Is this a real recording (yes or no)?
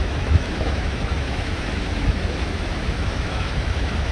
no